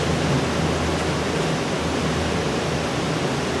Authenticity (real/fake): real